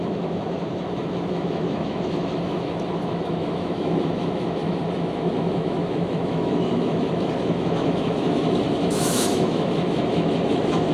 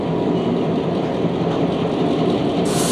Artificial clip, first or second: first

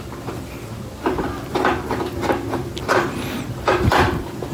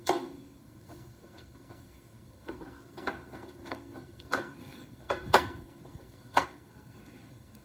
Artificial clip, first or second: second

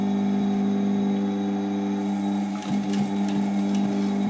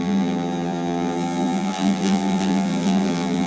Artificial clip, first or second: second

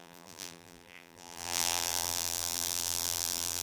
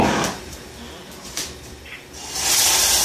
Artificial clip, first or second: first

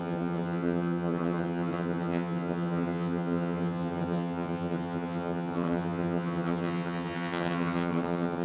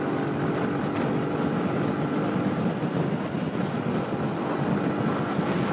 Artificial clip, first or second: first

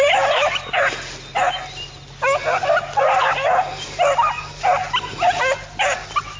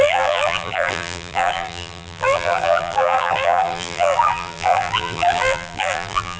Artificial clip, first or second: second